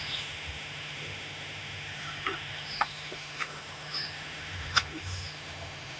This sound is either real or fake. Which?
fake